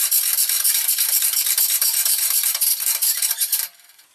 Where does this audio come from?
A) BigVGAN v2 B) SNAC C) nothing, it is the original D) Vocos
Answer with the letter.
A